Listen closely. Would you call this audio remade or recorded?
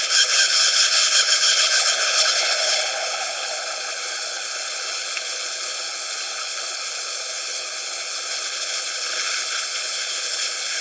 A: remade